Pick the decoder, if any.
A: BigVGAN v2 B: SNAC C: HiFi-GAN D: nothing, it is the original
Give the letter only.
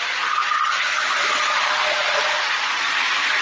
D